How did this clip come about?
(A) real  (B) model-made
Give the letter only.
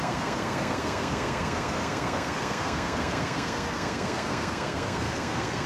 B